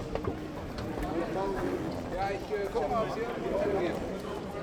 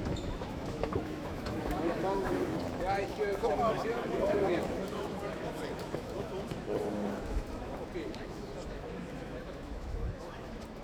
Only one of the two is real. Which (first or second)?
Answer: first